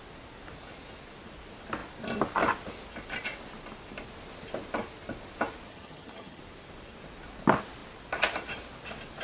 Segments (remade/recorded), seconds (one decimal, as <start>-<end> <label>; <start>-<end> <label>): 0.0-5.7 recorded; 5.7-6.4 remade; 6.4-9.2 recorded